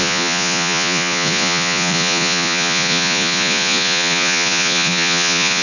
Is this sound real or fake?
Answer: fake